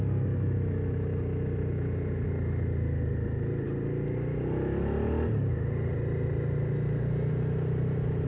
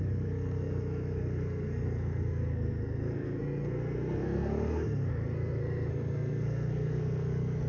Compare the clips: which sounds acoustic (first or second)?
first